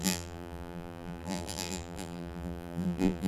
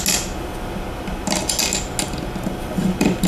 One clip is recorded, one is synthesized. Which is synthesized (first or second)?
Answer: first